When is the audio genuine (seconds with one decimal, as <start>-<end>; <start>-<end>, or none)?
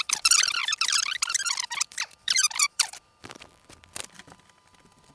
none